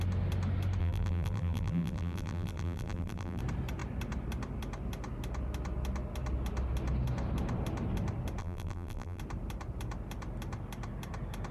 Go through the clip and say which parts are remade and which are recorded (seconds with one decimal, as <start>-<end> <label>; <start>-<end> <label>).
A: 0.0-0.8 recorded; 0.8-3.4 remade; 3.4-8.4 recorded; 8.4-9.2 remade; 9.2-11.5 recorded